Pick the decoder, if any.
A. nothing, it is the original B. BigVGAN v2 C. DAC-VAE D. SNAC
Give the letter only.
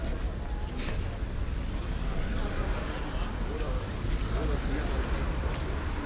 A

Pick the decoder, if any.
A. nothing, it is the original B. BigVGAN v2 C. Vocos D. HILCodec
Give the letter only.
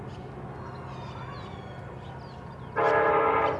A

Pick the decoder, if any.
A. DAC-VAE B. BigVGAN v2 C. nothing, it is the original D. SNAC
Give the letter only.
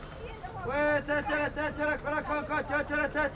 C